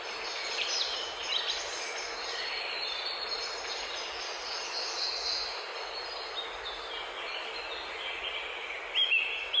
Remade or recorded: recorded